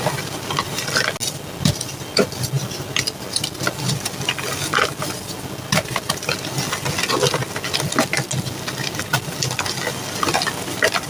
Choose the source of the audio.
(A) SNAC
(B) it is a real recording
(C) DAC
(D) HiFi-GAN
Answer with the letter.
B